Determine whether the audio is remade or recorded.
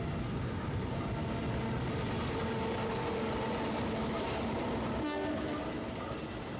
recorded